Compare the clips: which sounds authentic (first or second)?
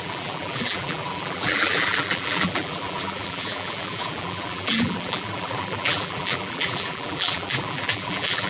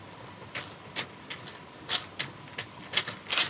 second